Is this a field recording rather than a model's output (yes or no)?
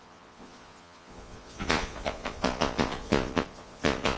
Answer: no